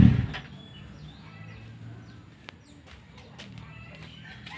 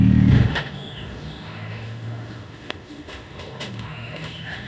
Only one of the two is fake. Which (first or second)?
second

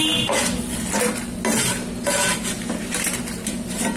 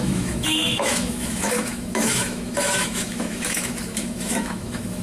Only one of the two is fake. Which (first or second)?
second